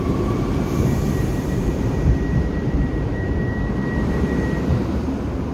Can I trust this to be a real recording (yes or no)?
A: no